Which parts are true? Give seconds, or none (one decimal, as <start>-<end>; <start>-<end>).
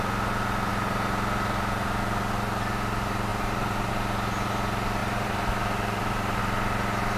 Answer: 0.0-3.3; 3.9-5.0; 6.4-7.2